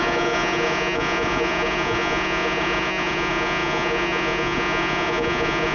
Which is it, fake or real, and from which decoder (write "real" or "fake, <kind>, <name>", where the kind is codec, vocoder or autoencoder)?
fake, vocoder, Vocos